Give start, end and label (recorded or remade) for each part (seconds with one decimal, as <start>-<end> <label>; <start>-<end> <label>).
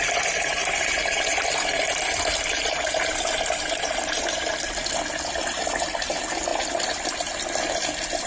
0.0-0.6 recorded; 0.6-5.6 remade; 5.6-6.5 recorded; 6.5-7.1 remade; 7.1-8.3 recorded